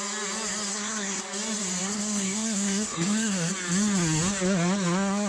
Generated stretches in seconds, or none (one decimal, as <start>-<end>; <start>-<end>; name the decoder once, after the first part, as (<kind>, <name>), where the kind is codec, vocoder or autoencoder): 0.7-1.2 (codec, SNAC); 1.8-3.5